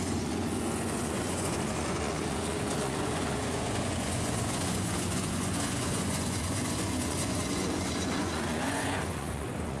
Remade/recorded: remade